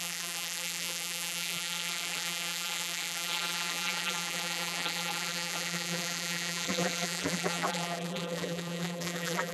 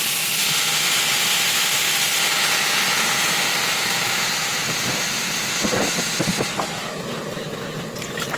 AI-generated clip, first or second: first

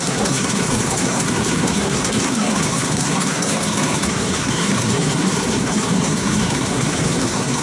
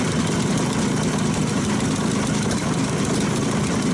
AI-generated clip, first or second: first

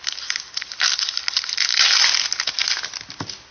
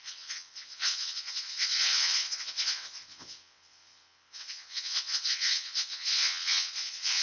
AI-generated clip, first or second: second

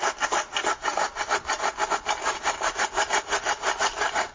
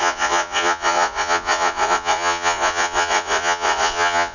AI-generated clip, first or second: second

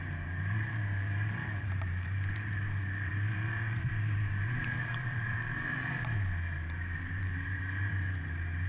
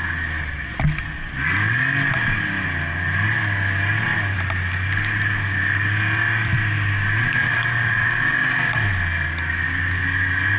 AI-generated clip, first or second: first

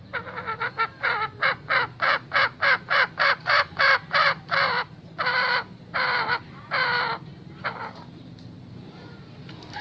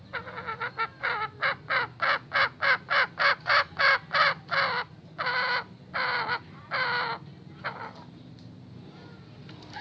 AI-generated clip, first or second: first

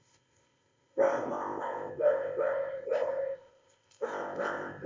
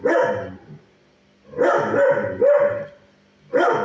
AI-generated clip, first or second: first